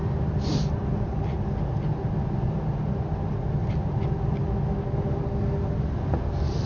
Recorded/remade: recorded